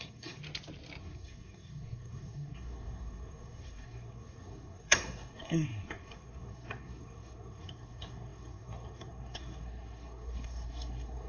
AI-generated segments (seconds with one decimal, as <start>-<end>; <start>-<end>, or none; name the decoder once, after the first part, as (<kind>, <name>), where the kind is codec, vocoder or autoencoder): 0.0-0.4 (codec, SNAC); 1.0-11.3